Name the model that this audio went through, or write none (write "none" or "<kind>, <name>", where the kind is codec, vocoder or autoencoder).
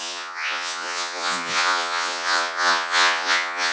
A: vocoder, Vocos